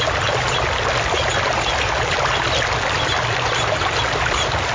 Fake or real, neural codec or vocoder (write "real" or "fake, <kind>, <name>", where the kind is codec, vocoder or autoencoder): real